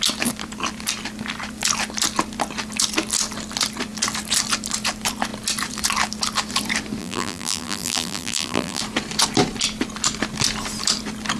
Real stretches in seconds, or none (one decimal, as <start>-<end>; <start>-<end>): 0.0-7.0; 8.8-11.4